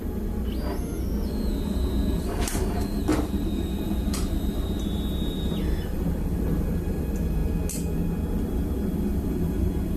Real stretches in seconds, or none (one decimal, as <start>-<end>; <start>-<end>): 0.0-1.7; 7.4-8.3